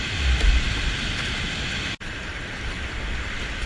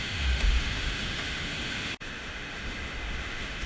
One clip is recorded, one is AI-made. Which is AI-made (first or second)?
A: second